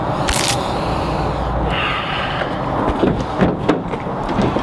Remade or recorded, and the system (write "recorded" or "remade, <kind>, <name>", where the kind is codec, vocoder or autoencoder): recorded